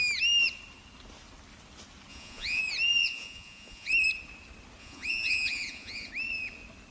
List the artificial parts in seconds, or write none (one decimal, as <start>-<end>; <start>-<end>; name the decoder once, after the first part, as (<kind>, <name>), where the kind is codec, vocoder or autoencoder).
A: 2.1-2.6 (vocoder, Vocos); 3.0-3.9; 4.8-6.1